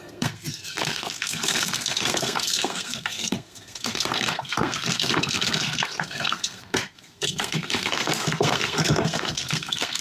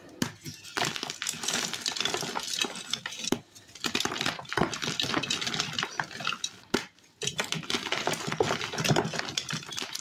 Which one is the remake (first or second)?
first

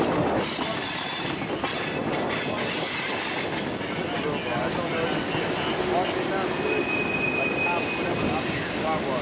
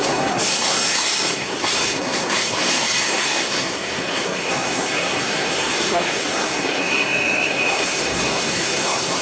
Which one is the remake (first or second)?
second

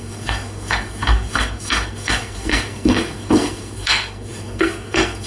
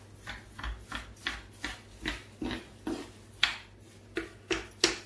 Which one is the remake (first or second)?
first